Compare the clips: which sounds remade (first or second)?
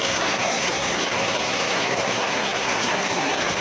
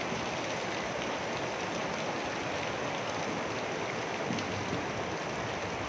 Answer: first